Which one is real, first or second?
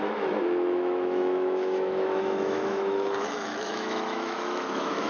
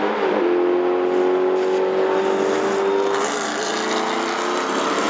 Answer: second